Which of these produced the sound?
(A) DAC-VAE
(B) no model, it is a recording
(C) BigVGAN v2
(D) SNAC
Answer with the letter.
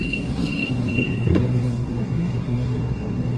D